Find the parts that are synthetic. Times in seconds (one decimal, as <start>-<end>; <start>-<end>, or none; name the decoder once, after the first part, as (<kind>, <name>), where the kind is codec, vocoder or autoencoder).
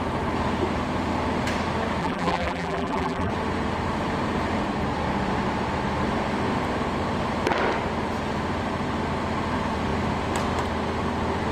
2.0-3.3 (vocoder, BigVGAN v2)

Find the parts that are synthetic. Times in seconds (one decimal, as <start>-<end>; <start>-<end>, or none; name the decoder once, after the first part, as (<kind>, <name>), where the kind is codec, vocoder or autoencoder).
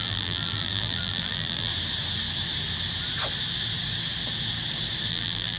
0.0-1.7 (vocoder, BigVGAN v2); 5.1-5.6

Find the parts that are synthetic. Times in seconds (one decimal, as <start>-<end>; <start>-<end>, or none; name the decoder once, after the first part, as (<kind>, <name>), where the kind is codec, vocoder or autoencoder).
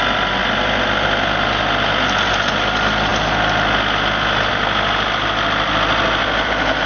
6.2-6.9 (vocoder, BigVGAN v2)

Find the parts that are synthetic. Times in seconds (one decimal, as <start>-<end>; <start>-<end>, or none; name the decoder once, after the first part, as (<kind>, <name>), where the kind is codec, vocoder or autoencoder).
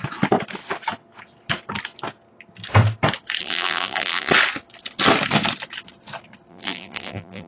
3.4-4.3 (vocoder, BigVGAN v2); 6.5-7.5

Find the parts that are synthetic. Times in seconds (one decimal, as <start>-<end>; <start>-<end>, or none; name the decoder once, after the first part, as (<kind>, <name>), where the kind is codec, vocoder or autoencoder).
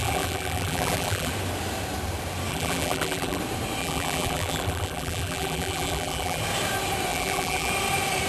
0.0-1.3 (vocoder, BigVGAN v2); 2.5-3.4; 3.8-6.4; 7.1-7.7